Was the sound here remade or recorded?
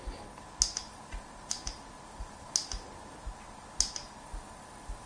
recorded